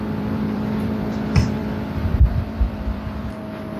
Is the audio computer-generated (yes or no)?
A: yes